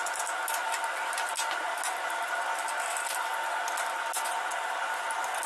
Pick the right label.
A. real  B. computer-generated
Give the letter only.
A